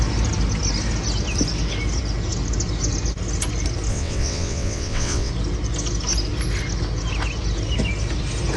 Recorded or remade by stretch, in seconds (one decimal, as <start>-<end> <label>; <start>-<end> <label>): 0.0-3.9 recorded; 3.9-5.3 remade; 5.3-8.6 recorded